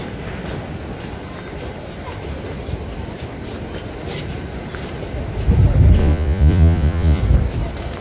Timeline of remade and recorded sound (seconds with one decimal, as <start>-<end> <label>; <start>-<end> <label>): 0.0-6.0 recorded; 6.0-7.2 remade; 7.2-8.0 recorded